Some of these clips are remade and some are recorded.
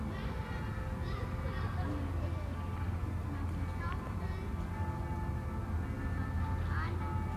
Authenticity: recorded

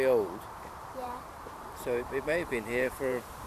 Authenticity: remade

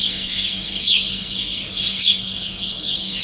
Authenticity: remade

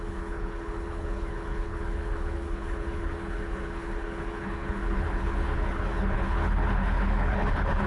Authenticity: remade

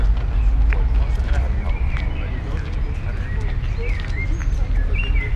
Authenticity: recorded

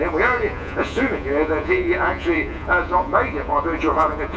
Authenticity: remade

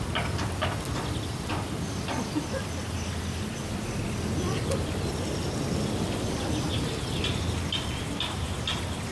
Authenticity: recorded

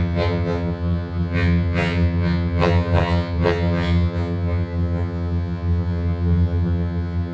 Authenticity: remade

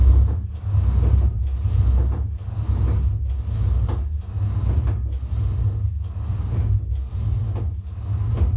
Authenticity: recorded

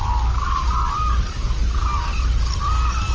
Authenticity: recorded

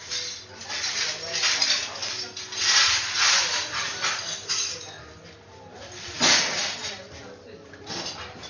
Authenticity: recorded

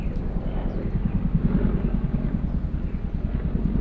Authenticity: recorded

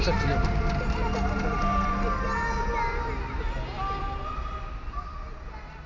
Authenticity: recorded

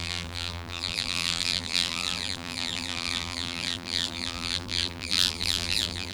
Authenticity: remade